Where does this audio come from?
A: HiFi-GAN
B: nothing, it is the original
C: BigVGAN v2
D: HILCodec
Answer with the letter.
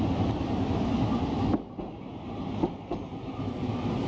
B